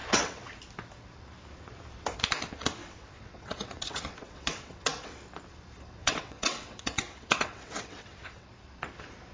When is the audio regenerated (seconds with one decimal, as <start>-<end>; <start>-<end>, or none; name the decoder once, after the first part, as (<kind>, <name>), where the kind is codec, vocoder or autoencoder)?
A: 0.0-0.5 (vocoder, WaveNeXt); 2.8-5.2; 6.0-8.5